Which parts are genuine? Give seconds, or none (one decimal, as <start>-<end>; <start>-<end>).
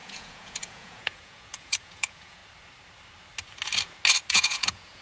2.4-4.3